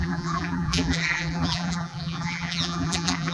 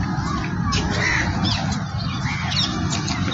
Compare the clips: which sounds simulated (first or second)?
first